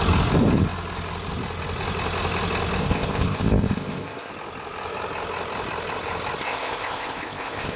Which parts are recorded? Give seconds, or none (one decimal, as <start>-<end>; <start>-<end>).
0.0-2.8; 4.3-6.4

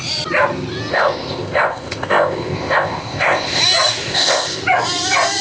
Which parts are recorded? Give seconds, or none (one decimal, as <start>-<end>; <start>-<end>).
0.0-0.9; 3.6-4.0; 4.6-5.4

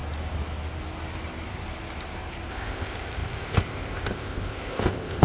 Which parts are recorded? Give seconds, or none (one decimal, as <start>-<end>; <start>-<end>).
0.0-2.5